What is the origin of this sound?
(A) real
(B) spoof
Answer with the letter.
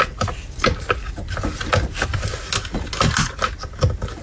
A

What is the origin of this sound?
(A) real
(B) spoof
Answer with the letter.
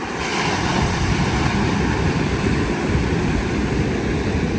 B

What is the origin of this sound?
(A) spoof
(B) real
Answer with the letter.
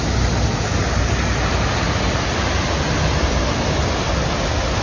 B